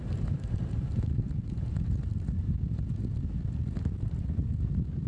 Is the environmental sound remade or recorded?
recorded